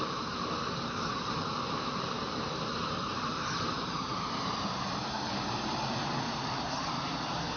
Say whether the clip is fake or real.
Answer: fake